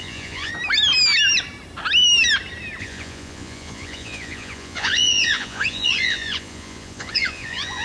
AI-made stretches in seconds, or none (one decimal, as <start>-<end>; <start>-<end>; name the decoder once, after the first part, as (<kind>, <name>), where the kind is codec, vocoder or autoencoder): 0.0-0.5 (vocoder, Vocos); 2.8-7.8